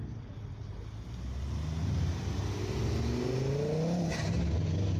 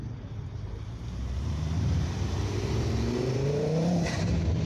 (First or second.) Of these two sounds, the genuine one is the first